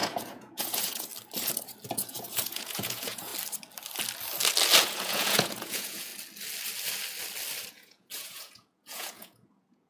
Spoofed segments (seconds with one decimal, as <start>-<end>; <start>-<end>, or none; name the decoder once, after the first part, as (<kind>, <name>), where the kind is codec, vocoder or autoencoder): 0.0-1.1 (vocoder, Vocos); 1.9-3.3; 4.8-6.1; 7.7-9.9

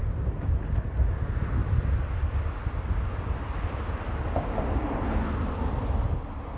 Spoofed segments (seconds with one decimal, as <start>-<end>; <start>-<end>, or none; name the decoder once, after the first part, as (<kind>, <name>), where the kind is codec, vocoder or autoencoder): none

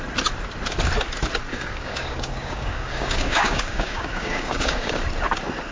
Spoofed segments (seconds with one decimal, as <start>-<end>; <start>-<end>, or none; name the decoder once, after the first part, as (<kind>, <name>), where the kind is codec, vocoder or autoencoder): 1.5-4.9 (codec, DAC)